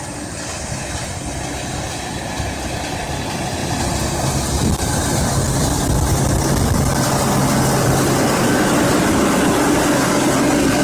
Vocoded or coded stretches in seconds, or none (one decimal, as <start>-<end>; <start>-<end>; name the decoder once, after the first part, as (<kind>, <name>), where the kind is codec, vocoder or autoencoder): none